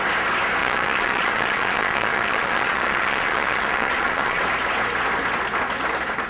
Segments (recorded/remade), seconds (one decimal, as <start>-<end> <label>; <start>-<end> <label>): 0.0-0.6 recorded; 0.6-4.4 remade; 4.4-6.3 recorded